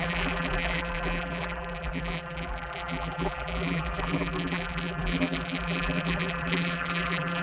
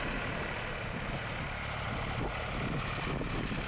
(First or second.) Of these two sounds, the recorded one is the second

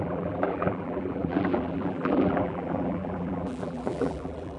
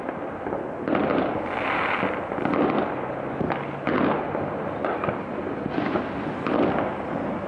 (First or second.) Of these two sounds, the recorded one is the second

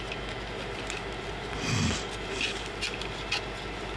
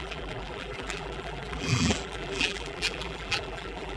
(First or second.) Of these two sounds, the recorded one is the first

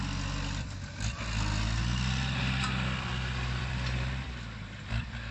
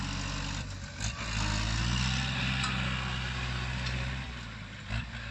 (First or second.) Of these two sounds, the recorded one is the second